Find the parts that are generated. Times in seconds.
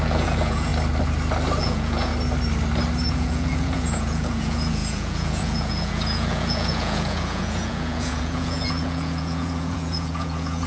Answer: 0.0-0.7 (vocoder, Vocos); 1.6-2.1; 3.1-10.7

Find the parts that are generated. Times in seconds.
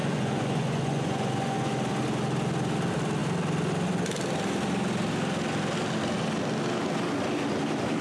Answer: 0.0-1.7 (vocoder, Vocos)